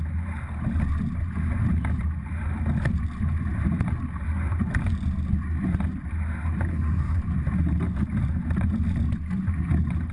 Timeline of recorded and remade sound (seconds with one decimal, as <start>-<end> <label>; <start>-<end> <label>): 0.0-6.7 recorded; 6.7-7.2 remade; 7.2-10.1 recorded